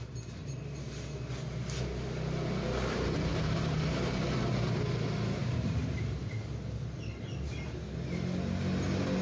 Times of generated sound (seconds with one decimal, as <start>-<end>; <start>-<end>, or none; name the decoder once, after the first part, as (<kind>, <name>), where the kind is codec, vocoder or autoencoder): 0.4-0.9 (vocoder, BigVGAN v2); 3.3-4.5; 5.4-6.3